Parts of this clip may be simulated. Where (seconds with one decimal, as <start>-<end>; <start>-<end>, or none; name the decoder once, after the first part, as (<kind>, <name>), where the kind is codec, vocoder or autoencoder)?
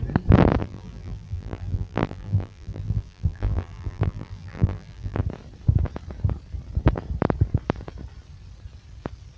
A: 0.6-5.2 (vocoder, BigVGAN v2)